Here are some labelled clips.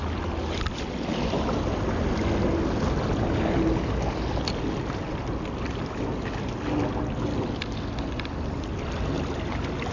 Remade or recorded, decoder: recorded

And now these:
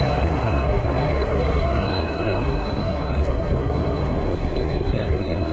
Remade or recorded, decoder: remade, codec, SNAC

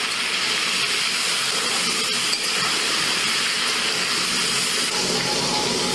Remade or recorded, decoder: recorded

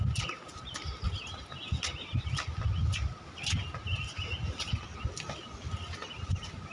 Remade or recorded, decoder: recorded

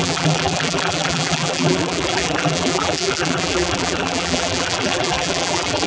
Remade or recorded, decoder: remade, vocoder, BigVGAN v2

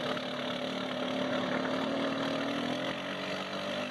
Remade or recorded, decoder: recorded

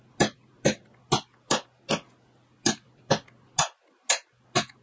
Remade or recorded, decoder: recorded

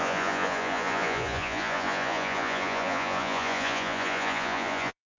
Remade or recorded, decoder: remade, vocoder, Vocos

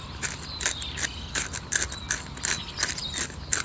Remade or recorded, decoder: recorded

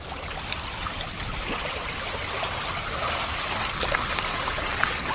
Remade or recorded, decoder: remade, vocoder, BigVGAN v2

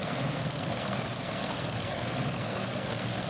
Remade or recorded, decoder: remade, codec, SNAC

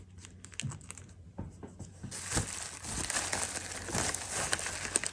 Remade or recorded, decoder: recorded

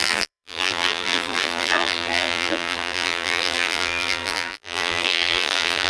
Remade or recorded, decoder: remade, vocoder, BigVGAN v2